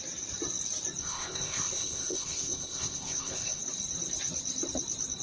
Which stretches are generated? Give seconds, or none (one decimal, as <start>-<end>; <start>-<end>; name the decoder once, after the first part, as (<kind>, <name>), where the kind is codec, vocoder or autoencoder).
1.0-3.6 (codec, ZipCodec)